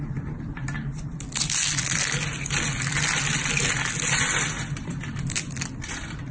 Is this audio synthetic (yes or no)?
no